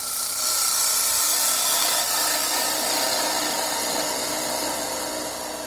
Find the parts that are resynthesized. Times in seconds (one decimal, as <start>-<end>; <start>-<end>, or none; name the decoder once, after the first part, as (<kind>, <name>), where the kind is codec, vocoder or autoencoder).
none